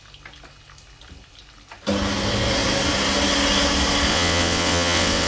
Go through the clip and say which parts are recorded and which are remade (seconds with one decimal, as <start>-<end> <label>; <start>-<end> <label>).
0.0-4.1 recorded; 4.1-5.3 remade